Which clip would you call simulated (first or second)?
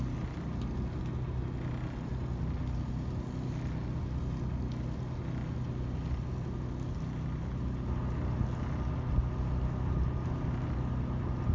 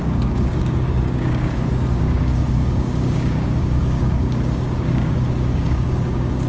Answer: second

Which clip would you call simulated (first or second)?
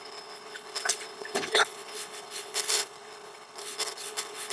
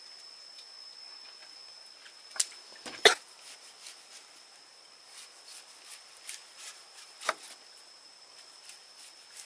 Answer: first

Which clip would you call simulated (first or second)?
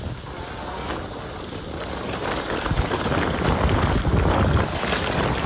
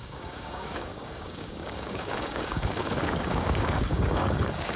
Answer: second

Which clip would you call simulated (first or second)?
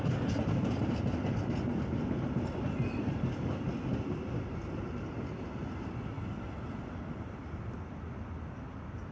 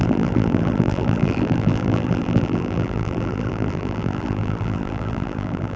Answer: second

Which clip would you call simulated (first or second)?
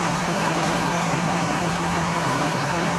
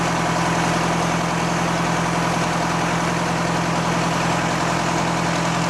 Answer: first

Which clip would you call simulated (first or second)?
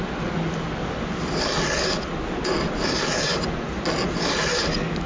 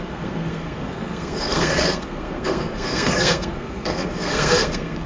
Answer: second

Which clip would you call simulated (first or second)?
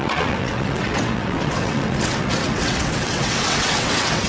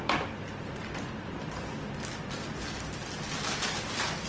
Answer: first